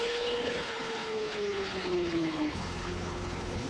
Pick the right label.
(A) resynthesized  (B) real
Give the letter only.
A